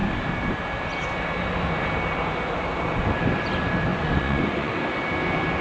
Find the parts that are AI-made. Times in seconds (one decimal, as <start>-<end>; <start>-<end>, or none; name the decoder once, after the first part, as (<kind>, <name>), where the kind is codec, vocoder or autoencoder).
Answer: 3.9-4.7 (vocoder, Vocos)